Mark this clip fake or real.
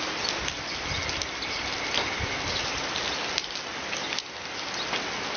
real